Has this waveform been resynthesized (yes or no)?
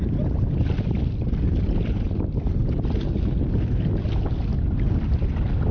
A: no